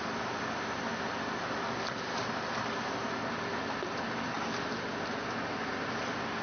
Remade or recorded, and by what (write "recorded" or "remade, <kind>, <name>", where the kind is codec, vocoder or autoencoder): recorded